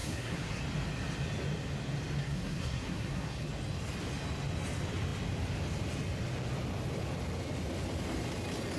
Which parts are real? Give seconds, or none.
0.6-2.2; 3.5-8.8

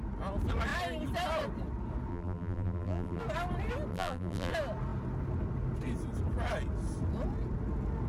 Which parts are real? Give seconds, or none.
0.0-2.1; 3.2-3.9; 4.5-8.1

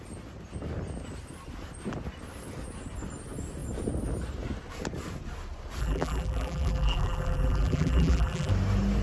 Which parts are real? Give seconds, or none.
0.0-5.8; 8.5-9.0

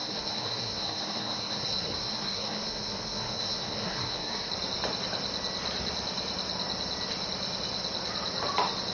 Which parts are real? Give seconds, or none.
4.5-8.9

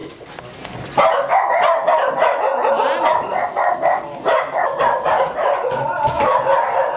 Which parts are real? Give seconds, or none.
0.0-4.3; 6.3-7.0